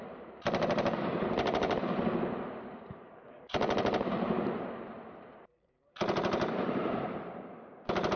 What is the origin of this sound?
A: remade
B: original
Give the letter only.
A